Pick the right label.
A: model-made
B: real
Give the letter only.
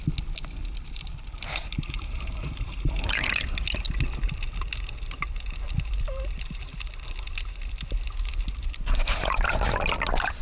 B